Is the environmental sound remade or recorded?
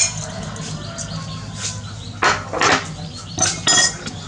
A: recorded